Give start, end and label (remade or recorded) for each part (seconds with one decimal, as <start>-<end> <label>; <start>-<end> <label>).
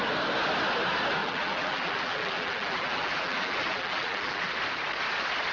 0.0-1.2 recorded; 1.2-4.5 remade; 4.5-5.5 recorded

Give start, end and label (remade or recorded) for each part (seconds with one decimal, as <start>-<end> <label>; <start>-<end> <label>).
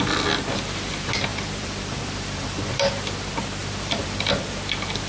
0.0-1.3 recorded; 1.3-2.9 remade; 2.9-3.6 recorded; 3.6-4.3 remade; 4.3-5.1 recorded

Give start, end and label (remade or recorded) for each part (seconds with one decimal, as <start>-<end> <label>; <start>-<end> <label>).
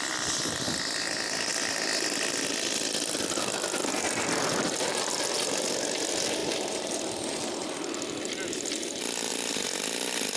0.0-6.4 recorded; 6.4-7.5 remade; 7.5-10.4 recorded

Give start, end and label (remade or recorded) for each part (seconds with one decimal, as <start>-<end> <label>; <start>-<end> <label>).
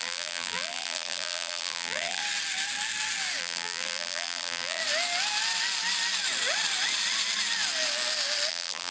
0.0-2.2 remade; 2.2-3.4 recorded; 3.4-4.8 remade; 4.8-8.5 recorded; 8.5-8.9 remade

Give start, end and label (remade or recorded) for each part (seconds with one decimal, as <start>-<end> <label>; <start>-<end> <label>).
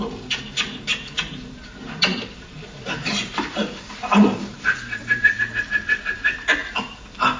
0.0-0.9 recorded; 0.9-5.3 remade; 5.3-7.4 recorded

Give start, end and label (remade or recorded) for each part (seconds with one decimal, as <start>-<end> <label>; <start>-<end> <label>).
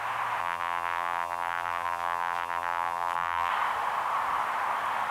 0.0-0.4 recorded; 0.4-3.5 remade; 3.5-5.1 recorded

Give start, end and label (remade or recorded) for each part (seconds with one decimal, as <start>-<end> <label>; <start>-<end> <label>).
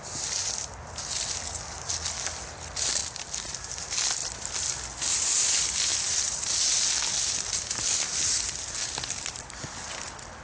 0.0-5.9 recorded; 5.9-6.5 remade; 6.5-10.4 recorded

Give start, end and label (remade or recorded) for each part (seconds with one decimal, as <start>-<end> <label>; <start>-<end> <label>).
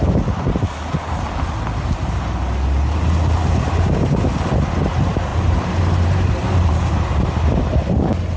0.0-5.3 recorded; 5.3-6.9 remade; 6.9-8.4 recorded